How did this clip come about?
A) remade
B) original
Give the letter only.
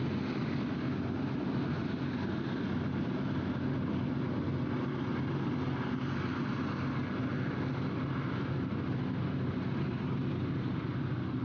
B